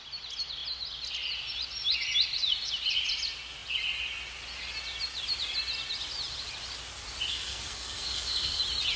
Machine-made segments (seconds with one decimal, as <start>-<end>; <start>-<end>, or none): 7.3-8.6